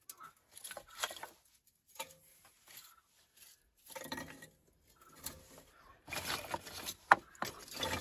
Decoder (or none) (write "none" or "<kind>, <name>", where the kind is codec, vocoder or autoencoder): none